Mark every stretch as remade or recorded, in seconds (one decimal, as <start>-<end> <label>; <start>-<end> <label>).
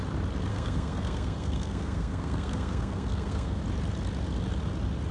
0.0-0.5 recorded; 0.5-3.6 remade; 3.6-5.1 recorded